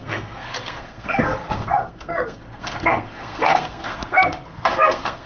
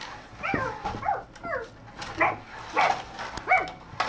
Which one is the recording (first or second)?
second